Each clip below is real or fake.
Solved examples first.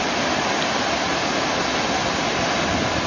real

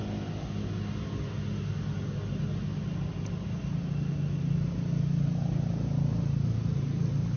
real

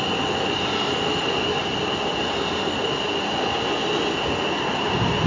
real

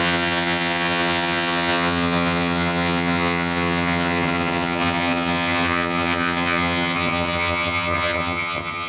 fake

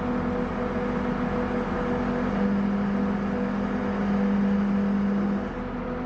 real